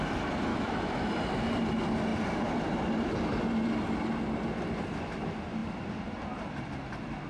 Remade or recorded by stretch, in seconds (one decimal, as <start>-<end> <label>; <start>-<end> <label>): 0.0-0.5 recorded; 0.5-1.1 remade; 1.1-7.3 recorded